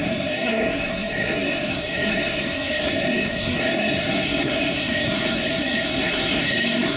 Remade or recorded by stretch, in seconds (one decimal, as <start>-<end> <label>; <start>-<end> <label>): 0.0-7.0 remade